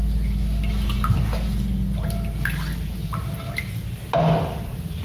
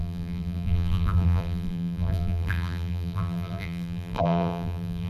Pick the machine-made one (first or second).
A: second